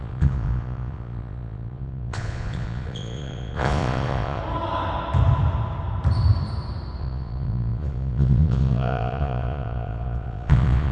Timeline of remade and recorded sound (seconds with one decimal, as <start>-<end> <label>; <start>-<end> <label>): 0.0-4.4 remade; 4.4-7.0 recorded; 7.0-10.9 remade